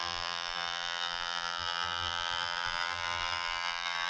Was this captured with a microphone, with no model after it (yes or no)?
no